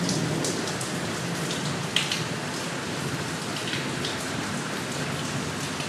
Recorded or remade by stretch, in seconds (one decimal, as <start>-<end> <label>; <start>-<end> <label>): 0.0-5.9 recorded